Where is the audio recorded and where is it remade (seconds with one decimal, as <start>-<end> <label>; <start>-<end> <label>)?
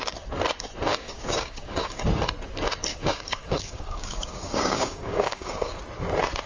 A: 0.0-0.9 recorded; 0.9-2.0 remade; 2.0-2.9 recorded; 2.9-5.8 remade; 5.8-6.5 recorded